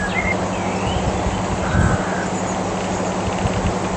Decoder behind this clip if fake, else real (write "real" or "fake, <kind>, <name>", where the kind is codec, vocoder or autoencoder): real